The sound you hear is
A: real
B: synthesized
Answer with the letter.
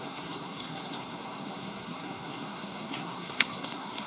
B